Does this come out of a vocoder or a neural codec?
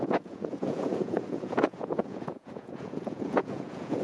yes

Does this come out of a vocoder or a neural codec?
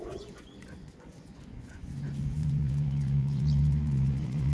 yes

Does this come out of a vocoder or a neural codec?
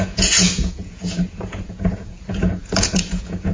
yes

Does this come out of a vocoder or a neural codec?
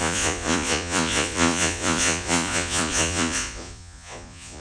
yes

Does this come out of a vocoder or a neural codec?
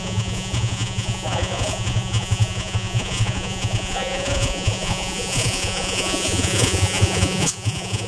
yes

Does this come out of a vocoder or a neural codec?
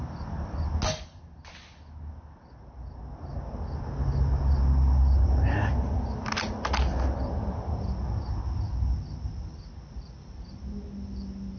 no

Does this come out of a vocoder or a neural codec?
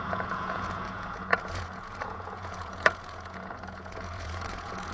yes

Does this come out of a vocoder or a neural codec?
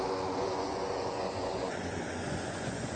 yes